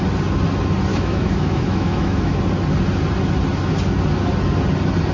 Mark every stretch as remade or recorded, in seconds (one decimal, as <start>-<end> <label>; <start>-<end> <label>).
0.0-0.9 recorded; 0.9-2.4 remade; 2.4-5.1 recorded